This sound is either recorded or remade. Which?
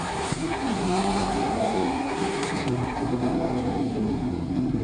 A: remade